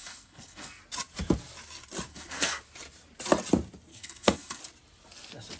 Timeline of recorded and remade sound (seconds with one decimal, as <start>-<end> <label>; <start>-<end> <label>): 0.0-0.8 remade; 0.8-2.1 recorded; 2.1-2.6 remade; 2.6-3.9 recorded; 3.9-4.6 remade; 4.6-5.6 recorded

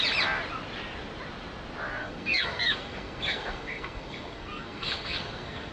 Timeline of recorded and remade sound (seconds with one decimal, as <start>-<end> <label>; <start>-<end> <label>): 0.0-2.0 recorded; 2.0-5.7 remade

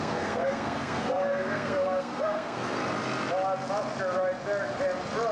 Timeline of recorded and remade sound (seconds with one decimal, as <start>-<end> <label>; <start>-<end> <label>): 0.0-2.8 remade; 2.8-5.3 recorded

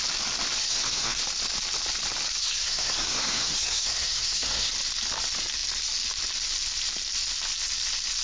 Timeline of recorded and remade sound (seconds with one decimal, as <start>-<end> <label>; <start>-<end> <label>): 0.0-0.6 recorded; 0.6-1.2 remade; 1.2-2.4 recorded; 2.4-4.7 remade; 4.7-8.2 recorded

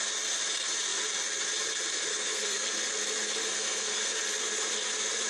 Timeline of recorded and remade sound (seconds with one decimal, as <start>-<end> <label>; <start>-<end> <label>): 0.0-2.1 recorded; 2.1-2.7 remade; 2.7-3.4 recorded; 3.4-4.2 remade; 4.2-5.3 recorded

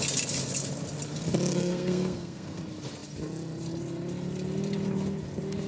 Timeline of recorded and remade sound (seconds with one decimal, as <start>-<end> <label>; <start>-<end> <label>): 0.0-1.5 recorded; 1.5-2.6 remade; 2.6-5.7 recorded